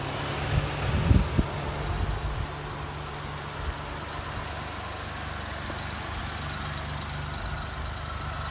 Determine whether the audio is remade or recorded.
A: recorded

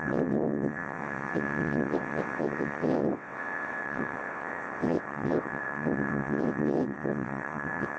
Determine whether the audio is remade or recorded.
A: remade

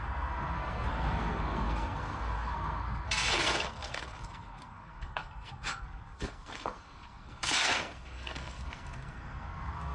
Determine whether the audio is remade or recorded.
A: remade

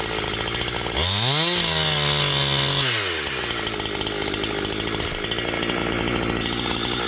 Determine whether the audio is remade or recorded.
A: recorded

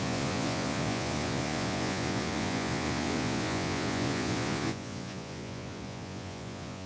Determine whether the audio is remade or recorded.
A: remade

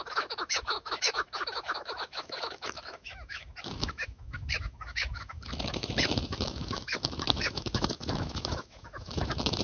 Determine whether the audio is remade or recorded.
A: remade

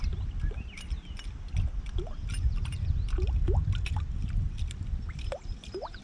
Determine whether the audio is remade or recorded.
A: remade